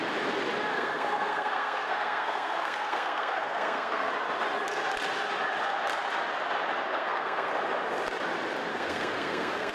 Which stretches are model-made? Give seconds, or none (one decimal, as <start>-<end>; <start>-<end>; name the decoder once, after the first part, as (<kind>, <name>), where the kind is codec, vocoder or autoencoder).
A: 0.7-4.1 (codec, SNAC); 6.9-7.5; 8.7-9.7